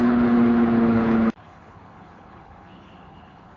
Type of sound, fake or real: fake